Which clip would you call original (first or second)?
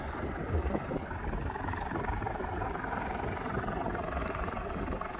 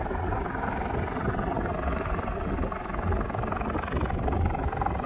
second